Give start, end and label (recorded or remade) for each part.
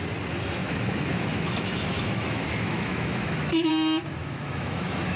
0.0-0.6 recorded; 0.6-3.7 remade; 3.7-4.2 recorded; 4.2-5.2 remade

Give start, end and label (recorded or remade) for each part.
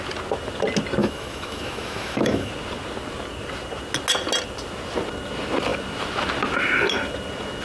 0.0-1.0 recorded; 1.0-2.5 remade; 2.5-7.6 recorded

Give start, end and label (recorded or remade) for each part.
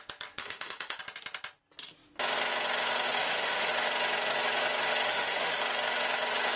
0.0-0.4 recorded; 0.4-1.0 remade; 1.0-3.2 recorded; 3.2-3.7 remade; 3.7-5.1 recorded; 5.1-5.6 remade; 5.6-6.6 recorded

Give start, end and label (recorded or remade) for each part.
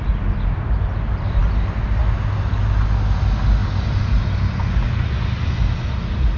0.0-6.4 recorded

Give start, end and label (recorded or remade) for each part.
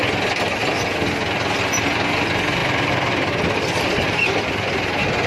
0.0-5.3 recorded